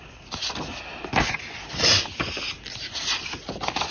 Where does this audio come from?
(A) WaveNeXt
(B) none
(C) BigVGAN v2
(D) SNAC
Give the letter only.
B